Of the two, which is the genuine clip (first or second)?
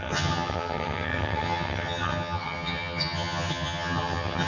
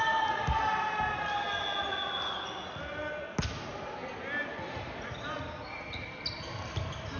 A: second